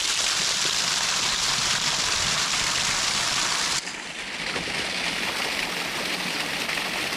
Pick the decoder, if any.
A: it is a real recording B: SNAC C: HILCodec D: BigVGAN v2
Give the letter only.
A